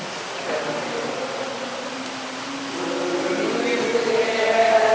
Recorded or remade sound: recorded